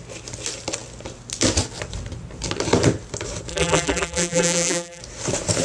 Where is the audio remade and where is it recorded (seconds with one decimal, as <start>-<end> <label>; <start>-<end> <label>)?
0.0-3.5 recorded; 3.5-5.0 remade; 5.0-5.6 recorded